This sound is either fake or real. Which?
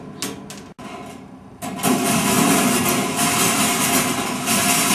real